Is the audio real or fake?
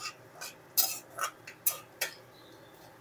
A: real